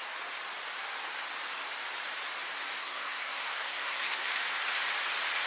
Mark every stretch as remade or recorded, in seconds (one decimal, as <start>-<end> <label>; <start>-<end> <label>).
0.0-2.8 recorded; 2.8-4.3 remade; 4.3-5.5 recorded